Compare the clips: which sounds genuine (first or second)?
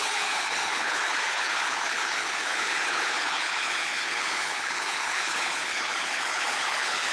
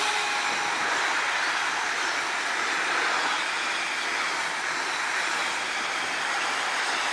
second